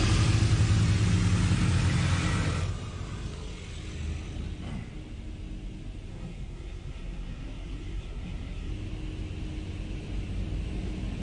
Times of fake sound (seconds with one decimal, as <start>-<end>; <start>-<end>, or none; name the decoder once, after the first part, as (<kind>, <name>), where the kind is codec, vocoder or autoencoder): 6.1-8.7 (codec, SNAC)